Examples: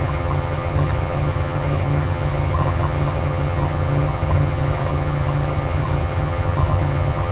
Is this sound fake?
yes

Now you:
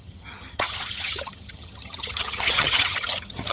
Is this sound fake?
yes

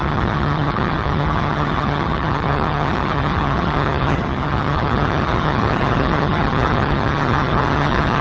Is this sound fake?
yes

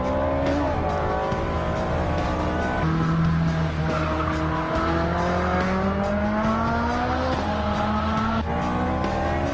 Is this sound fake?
no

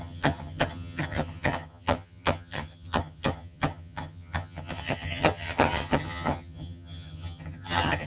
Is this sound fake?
yes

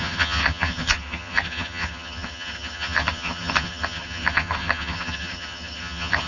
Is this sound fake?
yes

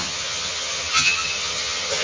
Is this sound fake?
yes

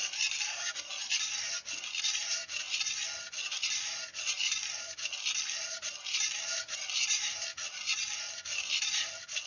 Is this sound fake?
no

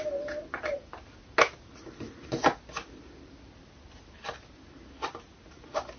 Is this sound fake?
no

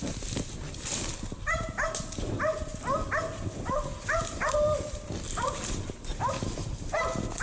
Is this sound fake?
no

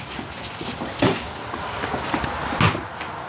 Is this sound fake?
no